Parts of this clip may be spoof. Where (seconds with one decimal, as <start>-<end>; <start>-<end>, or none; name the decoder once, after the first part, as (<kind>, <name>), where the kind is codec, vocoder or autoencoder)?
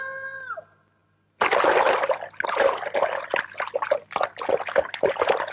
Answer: none